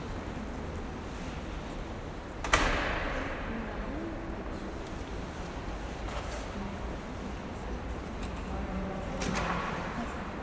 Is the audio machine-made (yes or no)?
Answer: no